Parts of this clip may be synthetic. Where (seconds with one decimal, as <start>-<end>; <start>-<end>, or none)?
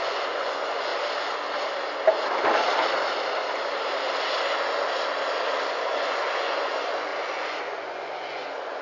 0.0-0.9; 5.7-8.8